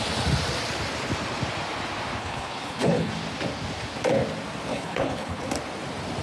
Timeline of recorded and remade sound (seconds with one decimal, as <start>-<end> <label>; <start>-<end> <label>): 0.0-2.2 recorded; 2.2-3.1 remade; 3.1-4.7 recorded; 4.7-5.5 remade; 5.5-6.2 recorded

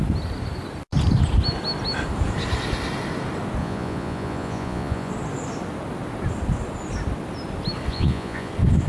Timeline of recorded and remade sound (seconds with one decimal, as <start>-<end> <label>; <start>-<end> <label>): 0.0-3.6 recorded; 3.6-5.1 remade; 5.1-7.9 recorded; 7.9-8.5 remade; 8.5-8.9 recorded

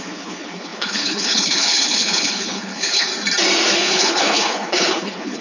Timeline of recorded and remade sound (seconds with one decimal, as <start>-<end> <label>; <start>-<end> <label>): 0.0-3.1 remade; 3.1-3.7 recorded; 3.7-5.4 remade